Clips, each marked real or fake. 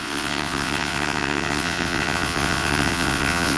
fake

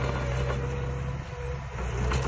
real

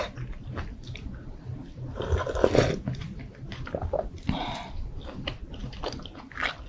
real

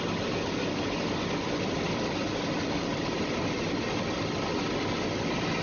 real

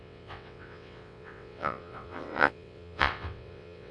fake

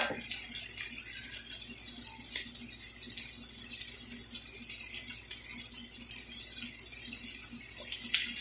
real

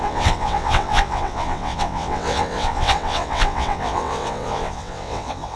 fake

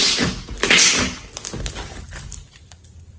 real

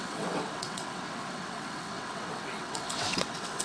fake